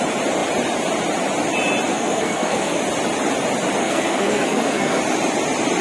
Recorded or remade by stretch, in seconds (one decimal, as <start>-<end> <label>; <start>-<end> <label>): 0.0-1.9 recorded; 1.9-2.8 remade; 2.8-3.8 recorded; 3.8-5.0 remade; 5.0-5.8 recorded